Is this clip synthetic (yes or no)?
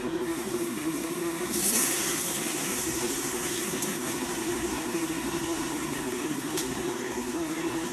yes